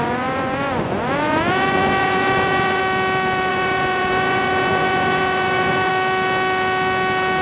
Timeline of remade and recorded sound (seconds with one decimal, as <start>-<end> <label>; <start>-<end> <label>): 0.0-2.8 remade; 2.8-3.5 recorded; 3.5-5.9 remade; 5.9-7.4 recorded